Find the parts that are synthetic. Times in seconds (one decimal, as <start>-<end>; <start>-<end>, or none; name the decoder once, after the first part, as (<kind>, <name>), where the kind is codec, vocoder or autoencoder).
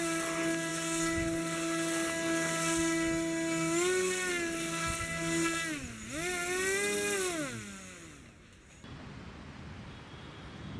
none